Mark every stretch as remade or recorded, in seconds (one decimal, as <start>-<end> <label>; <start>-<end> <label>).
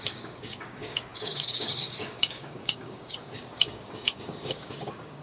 0.0-5.2 remade